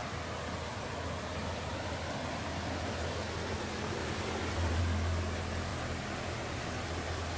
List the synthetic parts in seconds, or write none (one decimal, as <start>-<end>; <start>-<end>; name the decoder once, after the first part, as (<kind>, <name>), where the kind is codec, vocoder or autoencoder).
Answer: 4.0-4.8 (vocoder, BigVGAN v2); 5.7-6.7